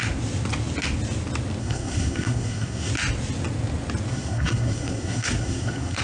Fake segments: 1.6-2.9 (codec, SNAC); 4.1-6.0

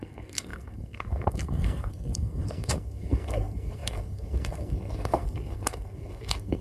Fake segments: 0.0-6.6 (codec, SNAC)

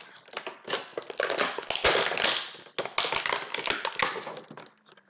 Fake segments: none

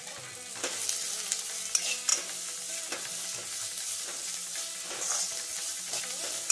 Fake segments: none

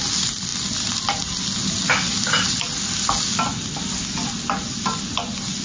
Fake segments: none

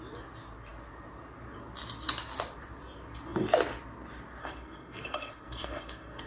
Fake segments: 4.4-6.3 (codec, SNAC)